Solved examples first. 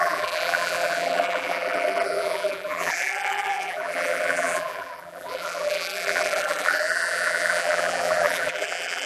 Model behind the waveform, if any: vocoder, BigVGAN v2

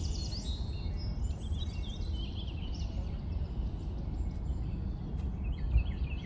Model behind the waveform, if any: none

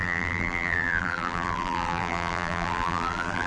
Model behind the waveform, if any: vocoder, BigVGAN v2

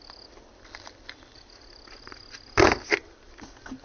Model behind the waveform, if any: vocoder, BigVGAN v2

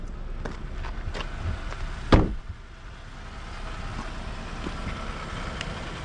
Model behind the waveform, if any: none